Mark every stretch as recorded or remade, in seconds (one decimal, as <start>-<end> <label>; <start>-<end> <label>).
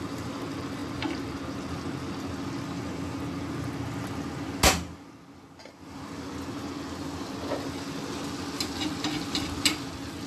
0.0-10.3 recorded